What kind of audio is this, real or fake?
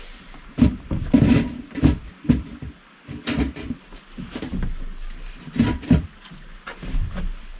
real